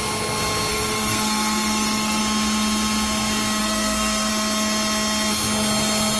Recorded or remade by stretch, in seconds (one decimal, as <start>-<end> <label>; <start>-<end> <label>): 0.0-0.7 recorded; 0.7-2.2 remade; 2.2-3.6 recorded; 3.6-4.3 remade; 4.3-6.2 recorded